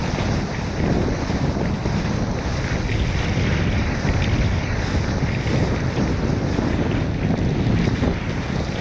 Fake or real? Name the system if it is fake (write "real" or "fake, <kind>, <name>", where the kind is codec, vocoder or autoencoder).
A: real